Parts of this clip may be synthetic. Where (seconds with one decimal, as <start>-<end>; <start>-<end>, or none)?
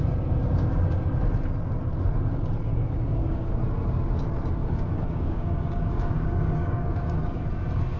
2.7-3.6; 4.6-7.4